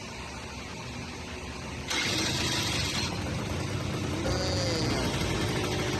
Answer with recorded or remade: recorded